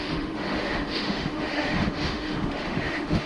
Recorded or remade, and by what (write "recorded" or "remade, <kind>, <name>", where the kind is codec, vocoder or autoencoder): remade, autoencoder, DAC-VAE